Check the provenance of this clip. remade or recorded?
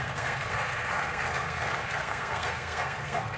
remade